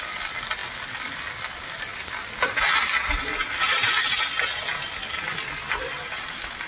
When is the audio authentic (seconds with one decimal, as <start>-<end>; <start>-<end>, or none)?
0.0-6.7